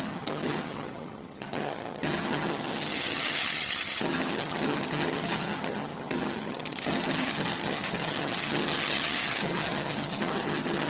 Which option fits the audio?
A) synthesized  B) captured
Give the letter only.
A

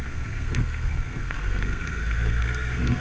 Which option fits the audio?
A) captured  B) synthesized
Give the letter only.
B